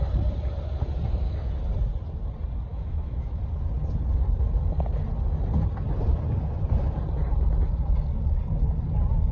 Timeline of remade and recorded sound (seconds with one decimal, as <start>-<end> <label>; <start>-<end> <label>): 0.0-2.7 recorded; 2.7-3.4 remade; 3.4-9.3 recorded